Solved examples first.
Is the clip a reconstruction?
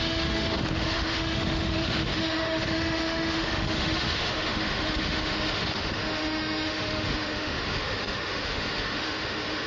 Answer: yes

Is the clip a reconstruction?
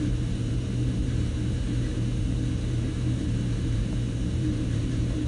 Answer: yes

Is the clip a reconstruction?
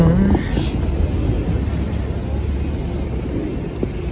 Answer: no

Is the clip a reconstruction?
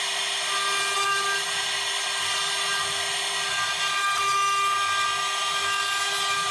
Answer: no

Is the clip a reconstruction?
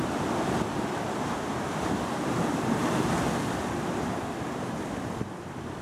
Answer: yes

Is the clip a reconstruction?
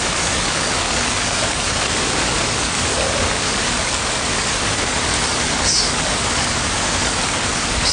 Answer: yes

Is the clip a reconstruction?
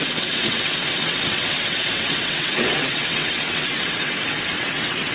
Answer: yes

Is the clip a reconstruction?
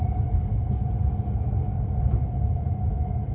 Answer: no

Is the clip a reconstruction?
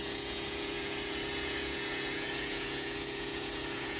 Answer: yes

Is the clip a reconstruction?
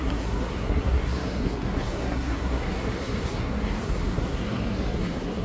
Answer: yes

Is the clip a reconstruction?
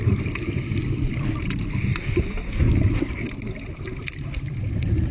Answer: no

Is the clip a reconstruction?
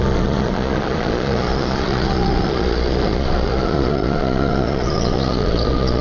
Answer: yes